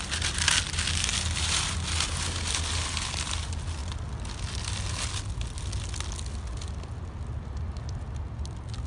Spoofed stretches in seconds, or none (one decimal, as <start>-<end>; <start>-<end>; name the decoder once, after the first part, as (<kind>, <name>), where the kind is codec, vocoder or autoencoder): none